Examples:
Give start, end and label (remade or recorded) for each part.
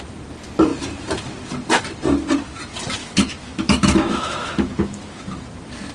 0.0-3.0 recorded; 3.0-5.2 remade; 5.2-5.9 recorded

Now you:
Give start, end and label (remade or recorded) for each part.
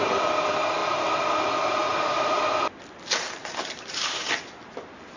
0.0-1.9 recorded; 1.9-2.4 remade; 2.4-3.4 recorded; 3.4-4.3 remade; 4.3-5.2 recorded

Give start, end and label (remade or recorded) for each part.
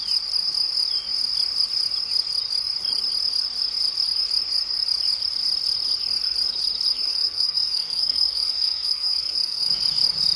0.0-7.1 recorded; 7.1-9.8 remade; 9.8-10.4 recorded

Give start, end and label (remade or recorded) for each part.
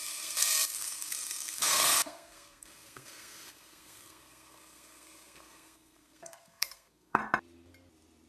0.0-7.2 remade; 7.2-8.3 recorded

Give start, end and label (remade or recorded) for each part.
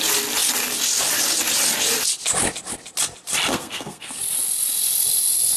0.0-3.5 recorded; 3.5-4.2 remade; 4.2-5.6 recorded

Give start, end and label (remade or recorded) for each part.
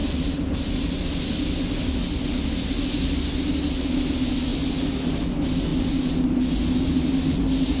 0.0-7.8 recorded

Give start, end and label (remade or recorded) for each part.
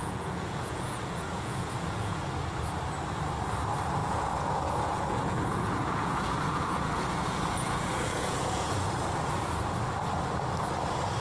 0.0-2.2 remade; 2.2-4.0 recorded; 4.0-8.9 remade; 8.9-11.2 recorded